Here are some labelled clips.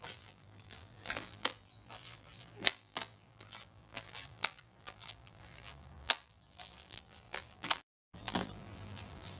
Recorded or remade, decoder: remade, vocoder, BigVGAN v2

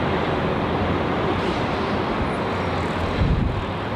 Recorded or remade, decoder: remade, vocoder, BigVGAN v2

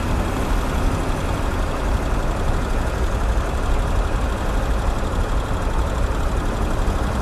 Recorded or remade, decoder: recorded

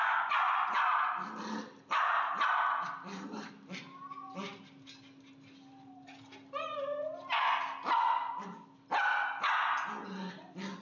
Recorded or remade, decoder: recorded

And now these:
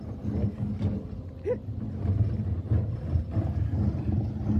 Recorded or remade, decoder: recorded